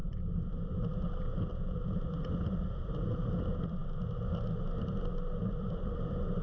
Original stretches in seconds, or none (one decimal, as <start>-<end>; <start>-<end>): 3.8-4.8